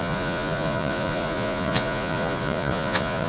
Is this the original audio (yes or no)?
no